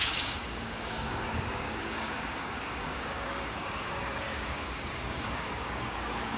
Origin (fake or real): fake